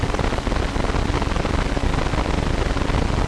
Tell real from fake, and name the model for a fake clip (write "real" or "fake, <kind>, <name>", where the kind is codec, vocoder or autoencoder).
real